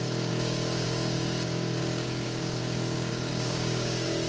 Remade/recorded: remade